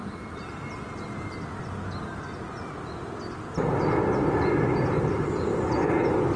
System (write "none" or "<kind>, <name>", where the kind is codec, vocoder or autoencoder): none